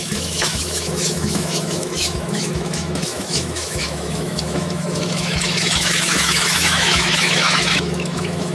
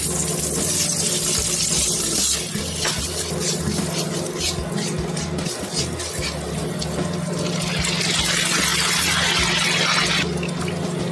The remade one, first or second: first